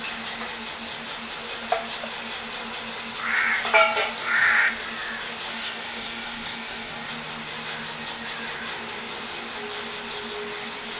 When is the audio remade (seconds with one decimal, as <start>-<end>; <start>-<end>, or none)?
4.2-4.7; 5.5-7.1